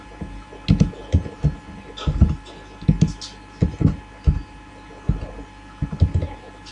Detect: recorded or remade recorded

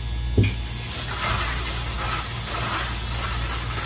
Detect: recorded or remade recorded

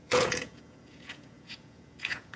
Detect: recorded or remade remade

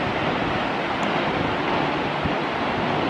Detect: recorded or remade recorded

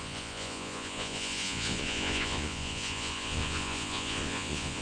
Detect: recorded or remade remade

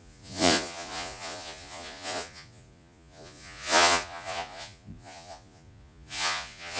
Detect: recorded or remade remade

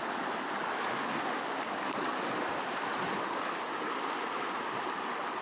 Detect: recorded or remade recorded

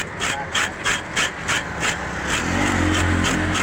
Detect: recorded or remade recorded